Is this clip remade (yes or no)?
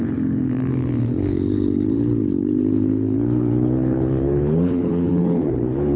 yes